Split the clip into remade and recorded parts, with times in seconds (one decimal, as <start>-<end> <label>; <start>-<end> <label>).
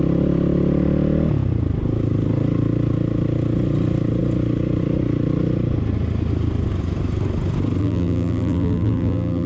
0.0-7.8 recorded; 7.8-9.5 remade